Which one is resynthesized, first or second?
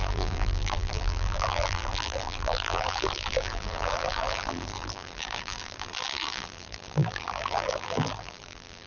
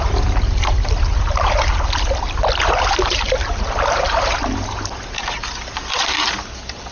first